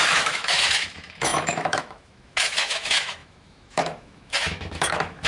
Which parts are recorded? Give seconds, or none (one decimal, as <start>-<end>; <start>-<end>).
none